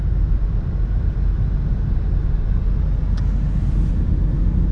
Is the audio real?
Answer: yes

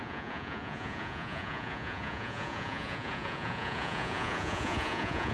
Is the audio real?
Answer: no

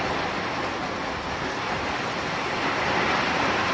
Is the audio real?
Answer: yes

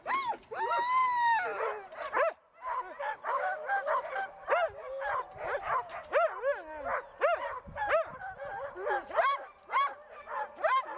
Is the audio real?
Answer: yes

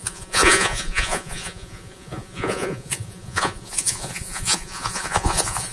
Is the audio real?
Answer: no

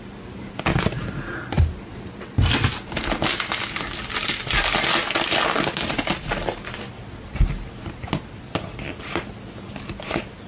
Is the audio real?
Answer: yes